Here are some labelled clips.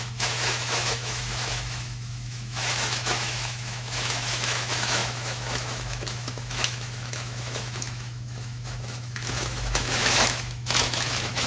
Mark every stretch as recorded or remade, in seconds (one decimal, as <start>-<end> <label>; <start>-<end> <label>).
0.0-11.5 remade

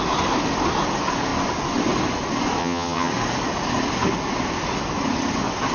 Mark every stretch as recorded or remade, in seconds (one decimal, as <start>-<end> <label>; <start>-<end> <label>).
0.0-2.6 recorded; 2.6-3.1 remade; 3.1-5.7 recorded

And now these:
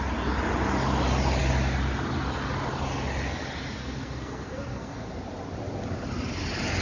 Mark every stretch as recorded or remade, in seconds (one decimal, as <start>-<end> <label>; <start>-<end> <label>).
0.0-3.8 recorded; 3.8-5.1 remade; 5.1-6.8 recorded

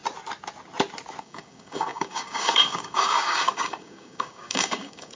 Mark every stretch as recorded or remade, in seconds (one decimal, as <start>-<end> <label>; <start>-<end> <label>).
0.0-1.2 recorded; 1.2-5.2 remade

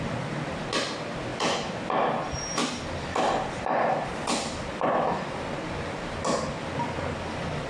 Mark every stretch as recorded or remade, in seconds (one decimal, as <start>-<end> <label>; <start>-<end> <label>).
0.0-7.7 recorded

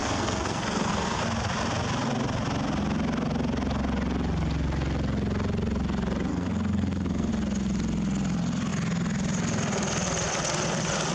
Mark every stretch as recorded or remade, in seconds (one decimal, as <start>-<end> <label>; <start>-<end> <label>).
0.0-1.2 remade; 1.2-6.3 recorded; 6.3-7.3 remade; 7.3-11.1 recorded